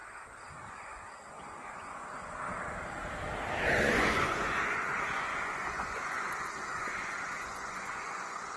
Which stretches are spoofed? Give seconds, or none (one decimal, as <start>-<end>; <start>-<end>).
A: 0.6-2.4; 3.7-8.6